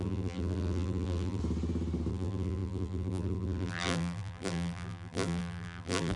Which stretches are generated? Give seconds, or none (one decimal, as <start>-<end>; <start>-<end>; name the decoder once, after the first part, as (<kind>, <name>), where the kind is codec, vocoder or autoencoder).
0.0-1.4 (vocoder, BigVGAN v2); 2.1-6.2